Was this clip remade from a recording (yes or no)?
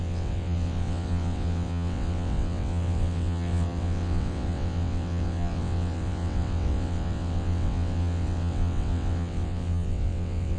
yes